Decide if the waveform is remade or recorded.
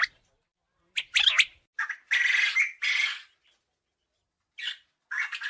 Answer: recorded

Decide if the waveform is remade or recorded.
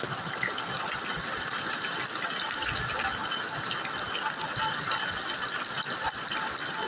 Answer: recorded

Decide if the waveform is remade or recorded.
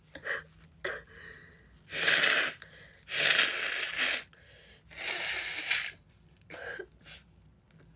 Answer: recorded